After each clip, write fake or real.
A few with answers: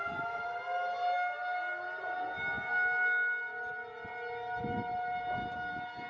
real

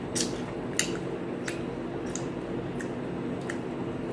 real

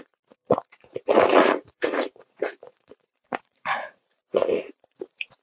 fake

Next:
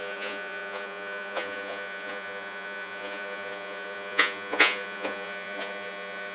fake